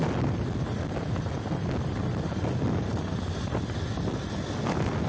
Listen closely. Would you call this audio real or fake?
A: real